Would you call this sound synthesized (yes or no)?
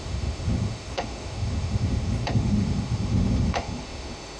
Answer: yes